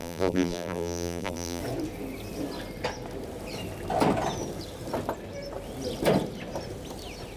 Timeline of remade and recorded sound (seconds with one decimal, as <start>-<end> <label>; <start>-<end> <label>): 0.0-1.6 remade; 1.6-7.4 recorded